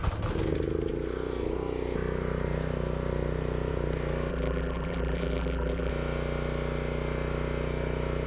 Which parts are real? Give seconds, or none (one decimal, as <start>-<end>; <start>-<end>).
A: 0.0-4.3; 5.9-8.3